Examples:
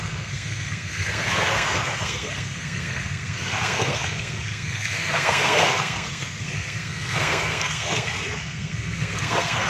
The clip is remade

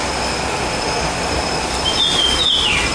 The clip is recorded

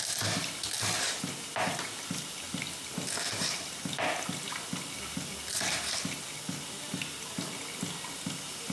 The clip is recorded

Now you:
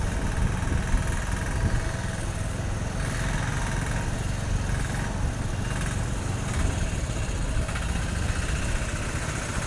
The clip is recorded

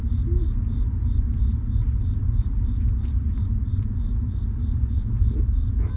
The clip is recorded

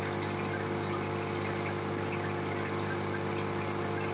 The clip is recorded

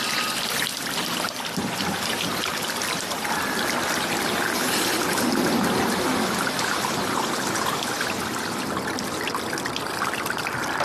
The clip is recorded